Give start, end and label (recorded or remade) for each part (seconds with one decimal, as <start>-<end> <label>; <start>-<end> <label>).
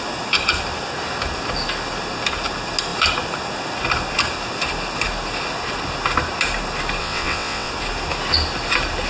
0.0-7.0 recorded; 7.0-7.7 remade; 7.7-9.1 recorded